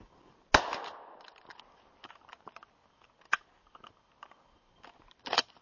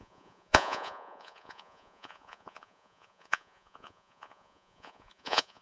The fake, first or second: second